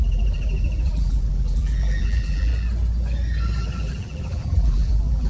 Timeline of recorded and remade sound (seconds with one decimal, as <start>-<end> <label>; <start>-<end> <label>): 0.0-2.5 remade; 2.5-3.6 recorded; 3.6-5.3 remade